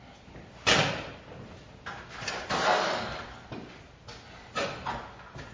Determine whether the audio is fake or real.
real